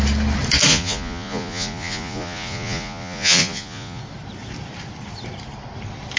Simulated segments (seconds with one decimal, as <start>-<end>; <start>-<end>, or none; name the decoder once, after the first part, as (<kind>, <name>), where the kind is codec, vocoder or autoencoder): 0.7-4.0 (vocoder, Vocos)

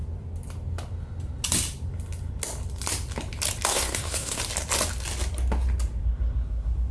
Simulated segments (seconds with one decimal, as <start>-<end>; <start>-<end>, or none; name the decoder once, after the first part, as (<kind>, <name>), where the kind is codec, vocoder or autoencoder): 3.7-4.4 (codec, SNAC); 6.0-6.9

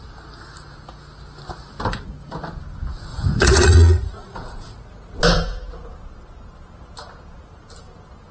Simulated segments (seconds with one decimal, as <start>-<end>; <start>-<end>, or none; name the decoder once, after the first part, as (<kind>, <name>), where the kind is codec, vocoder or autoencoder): 3.1-5.2 (vocoder, Vocos)

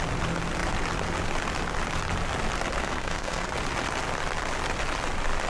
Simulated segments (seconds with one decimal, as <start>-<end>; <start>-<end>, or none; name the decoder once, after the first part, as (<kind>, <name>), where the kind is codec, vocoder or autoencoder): 2.8-3.5 (codec, SNAC)

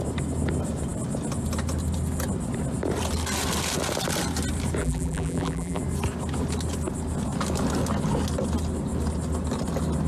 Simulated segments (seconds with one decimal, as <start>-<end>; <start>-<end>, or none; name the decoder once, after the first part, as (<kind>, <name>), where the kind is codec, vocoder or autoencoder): 4.8-5.8 (vocoder, BigVGAN v2)

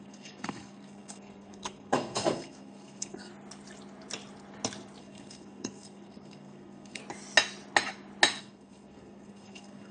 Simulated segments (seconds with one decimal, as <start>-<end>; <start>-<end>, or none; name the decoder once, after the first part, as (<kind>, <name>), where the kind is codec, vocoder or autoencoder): 0.0-3.3 (codec, SNAC); 5.0-7.0; 8.4-9.9

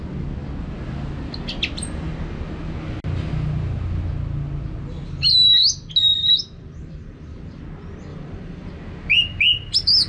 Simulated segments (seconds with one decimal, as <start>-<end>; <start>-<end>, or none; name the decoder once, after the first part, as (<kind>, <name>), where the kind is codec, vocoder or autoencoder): 6.0-7.6 (vocoder, BigVGAN v2); 8.1-8.7